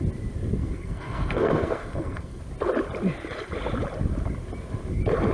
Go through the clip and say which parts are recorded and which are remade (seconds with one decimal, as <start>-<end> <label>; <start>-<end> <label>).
0.0-0.6 recorded; 0.6-2.4 remade; 2.4-5.3 recorded